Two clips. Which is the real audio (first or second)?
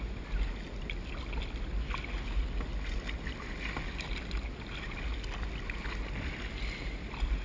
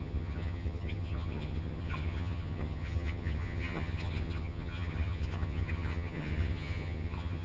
first